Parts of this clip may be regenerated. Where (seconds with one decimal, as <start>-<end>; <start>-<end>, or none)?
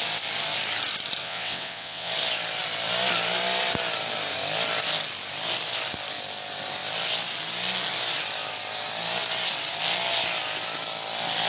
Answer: 1.2-2.1